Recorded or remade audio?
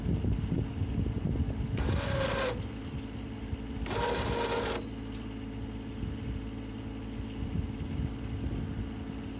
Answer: recorded